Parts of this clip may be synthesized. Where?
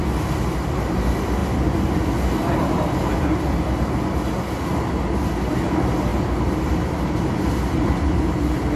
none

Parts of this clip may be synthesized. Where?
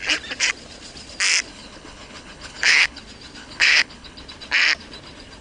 1.5-3.0 (codec, HILCodec); 3.4-4.2